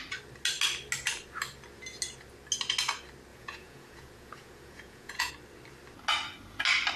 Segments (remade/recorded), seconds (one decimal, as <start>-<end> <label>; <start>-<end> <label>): 0.0-3.3 recorded; 3.3-5.3 remade; 5.3-7.0 recorded